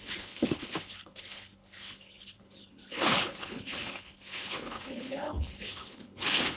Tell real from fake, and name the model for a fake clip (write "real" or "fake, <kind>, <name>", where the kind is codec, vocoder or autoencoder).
fake, codec, HILCodec